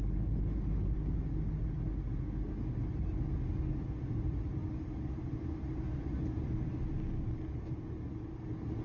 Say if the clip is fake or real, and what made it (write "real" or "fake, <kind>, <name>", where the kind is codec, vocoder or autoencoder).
real